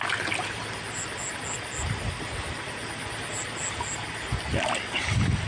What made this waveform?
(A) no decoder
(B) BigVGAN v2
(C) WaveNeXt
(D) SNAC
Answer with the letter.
A